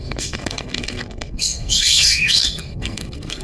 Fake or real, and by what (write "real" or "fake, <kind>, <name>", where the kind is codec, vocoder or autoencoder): fake, codec, SNAC